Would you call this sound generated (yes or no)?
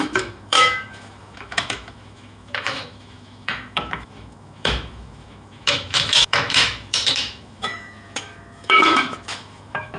yes